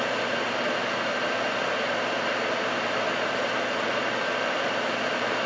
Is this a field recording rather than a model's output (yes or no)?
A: yes